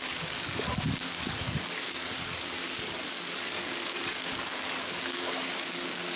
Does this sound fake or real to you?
fake